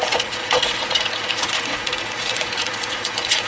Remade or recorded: remade